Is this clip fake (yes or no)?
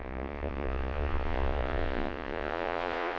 yes